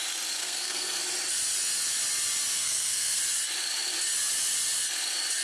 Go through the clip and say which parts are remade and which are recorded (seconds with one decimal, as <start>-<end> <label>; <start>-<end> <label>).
0.0-0.4 recorded; 0.4-1.0 remade; 1.0-2.6 recorded; 2.6-3.2 remade; 3.2-5.4 recorded